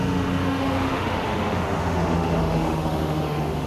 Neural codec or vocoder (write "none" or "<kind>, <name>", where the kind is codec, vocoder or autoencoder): autoencoder, DAC-VAE